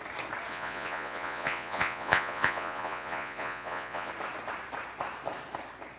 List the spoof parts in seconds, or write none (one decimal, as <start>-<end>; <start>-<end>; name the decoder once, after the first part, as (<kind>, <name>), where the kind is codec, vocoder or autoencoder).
0.5-4.1 (vocoder, Vocos)